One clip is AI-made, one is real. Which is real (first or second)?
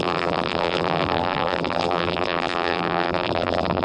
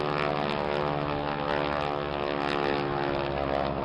second